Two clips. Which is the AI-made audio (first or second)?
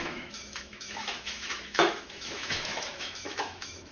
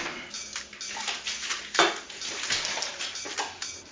first